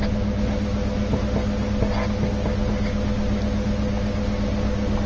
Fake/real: real